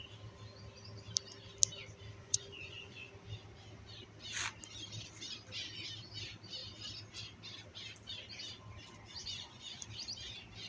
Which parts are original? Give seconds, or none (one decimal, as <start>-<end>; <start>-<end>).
0.0-2.2; 3.1-9.2; 9.8-10.7